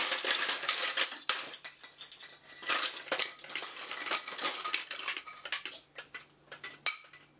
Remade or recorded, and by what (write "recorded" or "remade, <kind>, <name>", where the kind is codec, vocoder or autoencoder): recorded